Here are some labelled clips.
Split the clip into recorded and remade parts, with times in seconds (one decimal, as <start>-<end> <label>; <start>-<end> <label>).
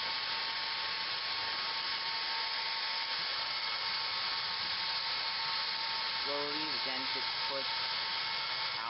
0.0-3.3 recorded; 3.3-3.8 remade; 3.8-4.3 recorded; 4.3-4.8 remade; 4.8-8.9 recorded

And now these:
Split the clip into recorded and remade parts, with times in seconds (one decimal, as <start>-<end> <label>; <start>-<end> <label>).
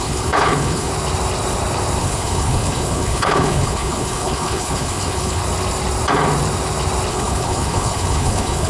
0.0-0.9 remade; 0.9-2.0 recorded; 2.0-5.4 remade; 5.4-7.1 recorded; 7.1-8.7 remade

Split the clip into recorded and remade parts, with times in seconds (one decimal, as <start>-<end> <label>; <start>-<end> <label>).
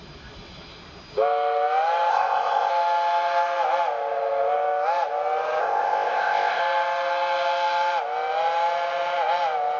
0.0-2.1 recorded; 2.1-2.7 remade; 2.7-5.6 recorded; 5.6-6.6 remade; 6.6-9.8 recorded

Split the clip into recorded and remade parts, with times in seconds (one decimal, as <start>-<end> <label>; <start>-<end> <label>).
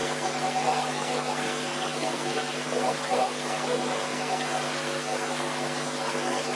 0.0-6.6 remade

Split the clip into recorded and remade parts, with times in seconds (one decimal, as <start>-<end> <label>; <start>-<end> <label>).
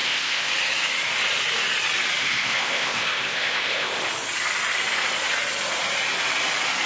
0.0-0.5 remade; 0.5-2.2 recorded; 2.2-4.0 remade; 4.0-6.9 recorded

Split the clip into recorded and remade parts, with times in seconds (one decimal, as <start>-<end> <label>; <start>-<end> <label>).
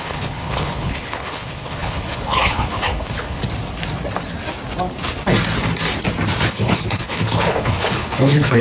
0.0-3.4 remade; 3.4-6.5 recorded; 6.5-8.6 remade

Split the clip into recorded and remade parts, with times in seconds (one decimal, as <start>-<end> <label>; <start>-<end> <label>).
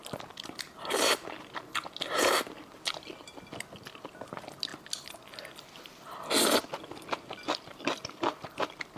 0.0-9.0 recorded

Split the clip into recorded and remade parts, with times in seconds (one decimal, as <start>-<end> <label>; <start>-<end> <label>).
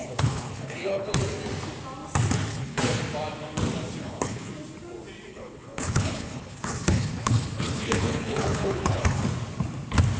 0.0-1.2 remade; 1.2-2.5 recorded; 2.5-3.0 remade; 3.0-4.0 recorded; 4.0-4.5 remade; 4.5-5.3 recorded; 5.3-9.2 remade; 9.2-10.2 recorded